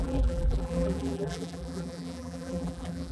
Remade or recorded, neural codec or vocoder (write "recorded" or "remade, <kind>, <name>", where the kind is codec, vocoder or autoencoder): remade, vocoder, BigVGAN v2